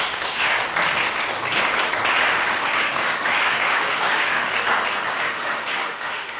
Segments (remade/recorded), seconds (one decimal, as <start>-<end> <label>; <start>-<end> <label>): 0.0-0.5 remade; 0.5-2.3 recorded; 2.3-4.5 remade; 4.5-5.1 recorded; 5.1-6.4 remade